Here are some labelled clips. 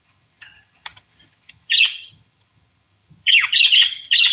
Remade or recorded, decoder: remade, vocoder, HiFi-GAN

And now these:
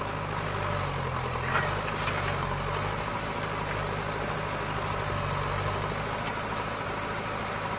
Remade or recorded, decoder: recorded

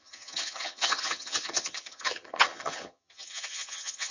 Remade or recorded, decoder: remade, vocoder, HiFi-GAN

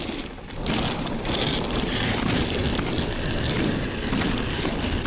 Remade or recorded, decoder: recorded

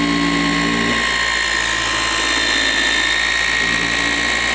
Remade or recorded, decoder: recorded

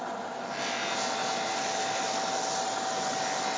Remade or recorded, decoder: recorded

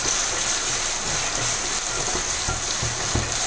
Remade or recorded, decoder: recorded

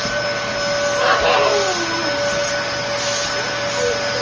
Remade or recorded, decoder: recorded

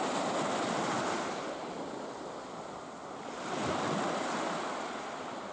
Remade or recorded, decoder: recorded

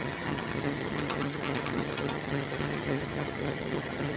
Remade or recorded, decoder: remade, vocoder, HiFi-GAN